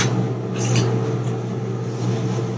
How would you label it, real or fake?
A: real